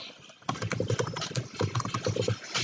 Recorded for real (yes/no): yes